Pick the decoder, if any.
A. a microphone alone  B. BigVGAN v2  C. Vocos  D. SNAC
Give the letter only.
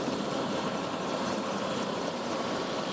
B